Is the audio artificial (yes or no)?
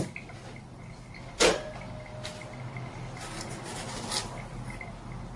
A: no